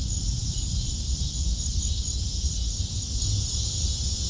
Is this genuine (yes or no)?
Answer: yes